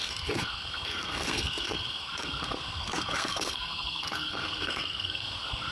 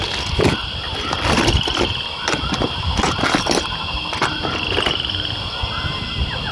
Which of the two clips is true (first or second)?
second